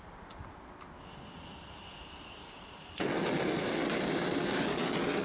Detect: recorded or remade recorded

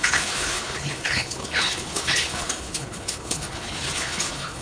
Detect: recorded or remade remade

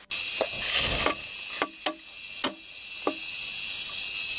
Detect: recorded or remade recorded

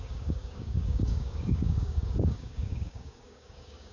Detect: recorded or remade remade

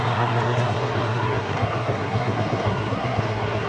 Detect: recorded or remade remade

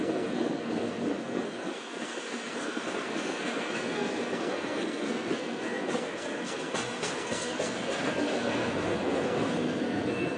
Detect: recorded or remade remade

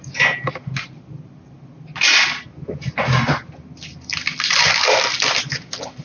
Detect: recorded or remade recorded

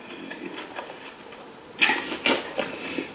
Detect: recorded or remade recorded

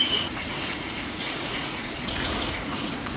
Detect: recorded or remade remade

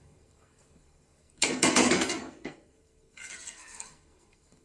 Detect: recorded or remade remade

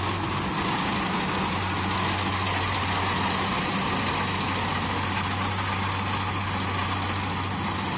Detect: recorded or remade recorded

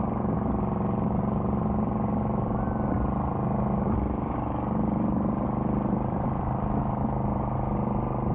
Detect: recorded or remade recorded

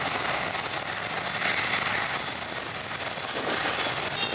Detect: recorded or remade recorded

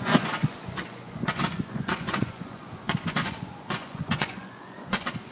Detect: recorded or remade remade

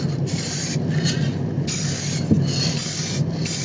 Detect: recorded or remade recorded